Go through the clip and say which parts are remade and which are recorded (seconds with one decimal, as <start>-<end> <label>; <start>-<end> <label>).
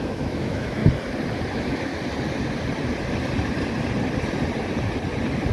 0.0-0.8 remade; 0.8-1.5 recorded; 1.5-1.9 remade; 1.9-5.5 recorded